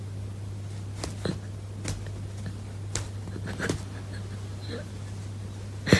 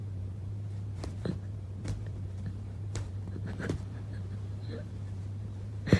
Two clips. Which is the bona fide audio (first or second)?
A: first